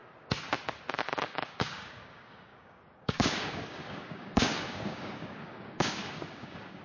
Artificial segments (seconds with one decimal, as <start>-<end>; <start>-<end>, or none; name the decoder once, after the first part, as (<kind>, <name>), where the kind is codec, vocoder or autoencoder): 0.9-6.8 (codec, DAC)

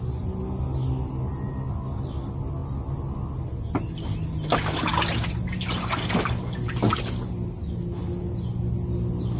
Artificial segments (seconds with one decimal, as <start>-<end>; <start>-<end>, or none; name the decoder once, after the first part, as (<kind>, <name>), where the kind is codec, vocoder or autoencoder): none

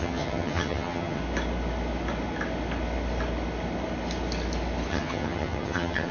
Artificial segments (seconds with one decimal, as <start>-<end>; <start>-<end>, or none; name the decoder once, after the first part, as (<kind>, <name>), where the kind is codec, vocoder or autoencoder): 0.0-1.2 (vocoder, HiFi-GAN); 4.9-6.1

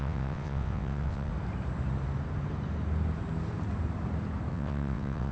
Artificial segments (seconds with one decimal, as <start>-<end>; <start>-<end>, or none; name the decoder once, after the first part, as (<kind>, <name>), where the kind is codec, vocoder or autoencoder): 0.0-1.3 (vocoder, WaveNeXt); 4.5-5.3

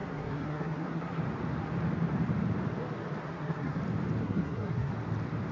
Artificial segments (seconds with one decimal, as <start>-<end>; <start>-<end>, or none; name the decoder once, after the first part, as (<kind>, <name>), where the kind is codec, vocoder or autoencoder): 0.0-1.2 (codec, SNAC); 3.2-3.8; 4.2-4.9